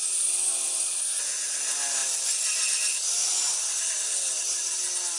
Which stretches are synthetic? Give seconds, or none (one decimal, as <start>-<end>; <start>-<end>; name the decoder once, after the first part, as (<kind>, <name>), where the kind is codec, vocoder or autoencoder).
none